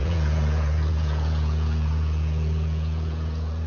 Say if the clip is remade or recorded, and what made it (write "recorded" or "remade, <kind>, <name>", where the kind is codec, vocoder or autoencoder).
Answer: remade, vocoder, Vocos